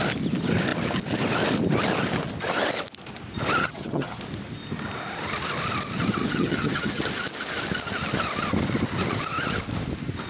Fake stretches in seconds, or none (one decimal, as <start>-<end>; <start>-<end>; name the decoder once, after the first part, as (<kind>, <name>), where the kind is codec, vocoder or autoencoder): 3.6-4.2 (vocoder, HiFi-GAN); 6.2-7.0

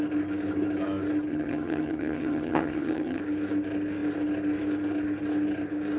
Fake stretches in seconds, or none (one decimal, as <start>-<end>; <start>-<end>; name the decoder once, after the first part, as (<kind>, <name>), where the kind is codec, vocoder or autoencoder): 1.3-3.2 (vocoder, HiFi-GAN)

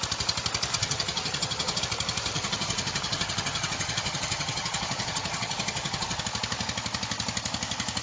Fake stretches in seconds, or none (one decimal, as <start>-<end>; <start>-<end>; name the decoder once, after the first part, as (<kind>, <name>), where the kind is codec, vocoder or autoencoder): 0.7-1.8 (vocoder, HiFi-GAN); 2.3-6.2